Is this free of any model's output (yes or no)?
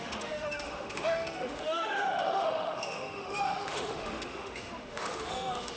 no